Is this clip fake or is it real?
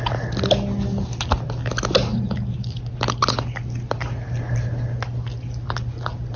real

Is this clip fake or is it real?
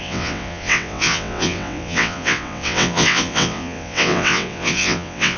fake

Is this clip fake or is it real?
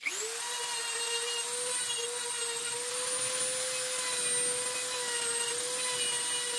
real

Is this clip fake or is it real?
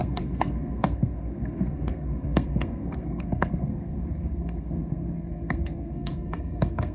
fake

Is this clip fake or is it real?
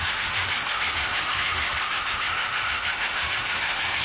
fake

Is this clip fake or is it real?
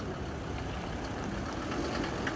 real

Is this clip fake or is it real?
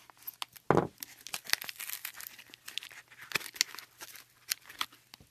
real